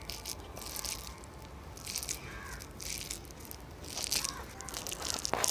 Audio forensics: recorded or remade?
recorded